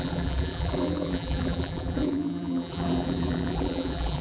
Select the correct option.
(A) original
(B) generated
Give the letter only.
B